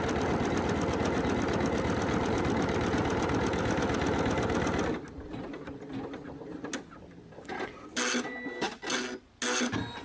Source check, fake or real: real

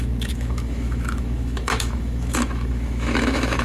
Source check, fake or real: fake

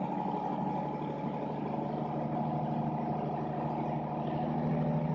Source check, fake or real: real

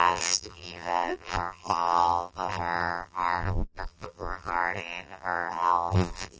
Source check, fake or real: fake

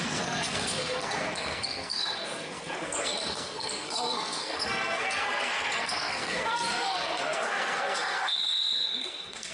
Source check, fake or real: fake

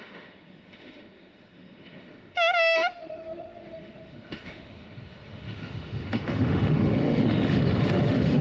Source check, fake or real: fake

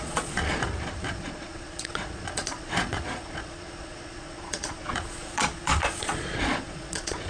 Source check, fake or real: fake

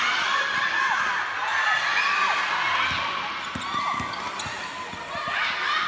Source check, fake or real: real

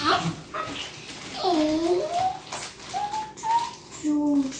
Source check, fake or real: real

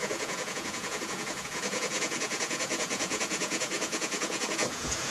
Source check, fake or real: fake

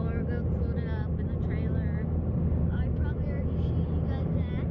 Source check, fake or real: real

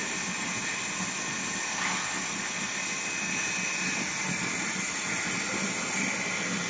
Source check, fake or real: real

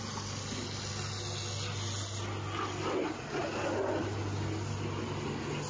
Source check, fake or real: real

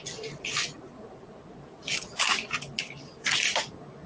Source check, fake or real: real